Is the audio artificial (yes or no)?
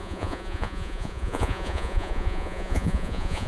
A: yes